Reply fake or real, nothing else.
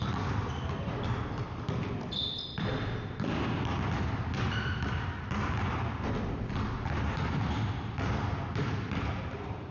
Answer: real